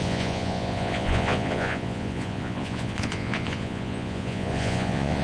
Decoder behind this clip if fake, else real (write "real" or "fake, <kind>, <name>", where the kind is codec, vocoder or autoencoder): fake, vocoder, Vocos